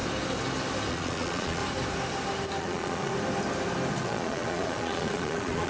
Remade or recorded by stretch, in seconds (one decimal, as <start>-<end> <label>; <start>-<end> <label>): 0.0-0.9 recorded; 0.9-1.6 remade; 1.6-2.6 recorded; 2.6-3.1 remade; 3.1-3.9 recorded; 3.9-5.7 remade